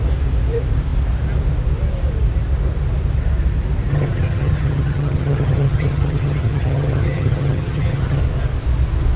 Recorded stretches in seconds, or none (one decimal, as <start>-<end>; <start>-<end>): 0.0-3.9; 8.2-9.2